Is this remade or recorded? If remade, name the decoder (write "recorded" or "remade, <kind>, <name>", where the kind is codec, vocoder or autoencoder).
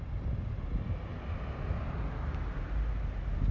recorded